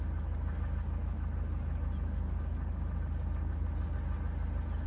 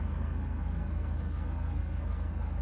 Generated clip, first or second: second